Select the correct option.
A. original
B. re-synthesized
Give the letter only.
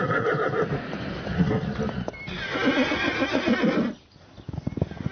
A